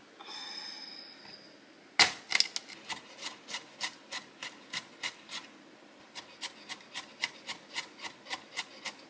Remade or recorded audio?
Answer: recorded